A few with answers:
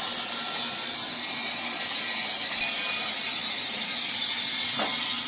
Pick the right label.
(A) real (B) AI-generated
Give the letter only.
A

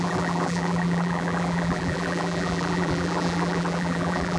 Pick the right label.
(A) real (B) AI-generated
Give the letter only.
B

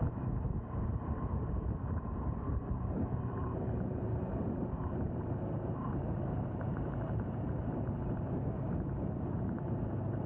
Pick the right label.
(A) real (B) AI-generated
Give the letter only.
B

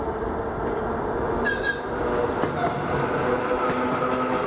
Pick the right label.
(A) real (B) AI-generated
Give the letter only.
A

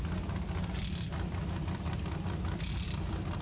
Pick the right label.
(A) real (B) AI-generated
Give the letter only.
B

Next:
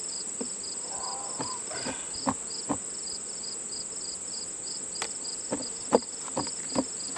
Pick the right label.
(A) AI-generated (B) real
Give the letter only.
B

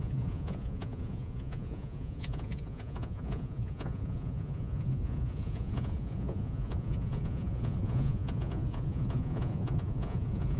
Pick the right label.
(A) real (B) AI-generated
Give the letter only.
B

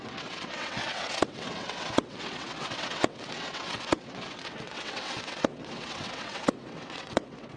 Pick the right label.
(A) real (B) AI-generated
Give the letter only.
B